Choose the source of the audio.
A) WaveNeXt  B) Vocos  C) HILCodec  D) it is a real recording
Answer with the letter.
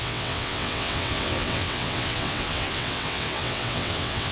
A